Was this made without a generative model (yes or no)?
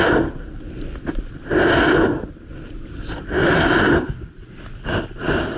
yes